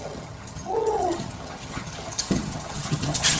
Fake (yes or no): yes